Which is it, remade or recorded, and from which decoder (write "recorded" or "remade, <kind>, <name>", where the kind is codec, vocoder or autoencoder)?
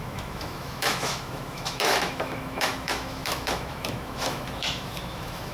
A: remade, autoencoder, DAC-VAE